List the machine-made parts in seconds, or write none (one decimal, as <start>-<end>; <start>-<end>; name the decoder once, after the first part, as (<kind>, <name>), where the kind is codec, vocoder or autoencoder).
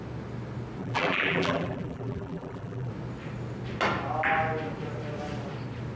0.8-2.9 (vocoder, BigVGAN v2)